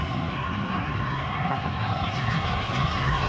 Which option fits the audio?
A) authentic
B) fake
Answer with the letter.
B